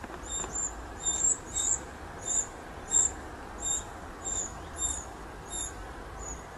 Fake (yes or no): yes